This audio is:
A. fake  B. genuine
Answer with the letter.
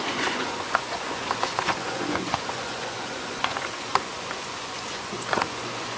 A